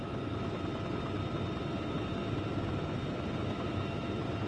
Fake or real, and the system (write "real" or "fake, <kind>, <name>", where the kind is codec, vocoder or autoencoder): real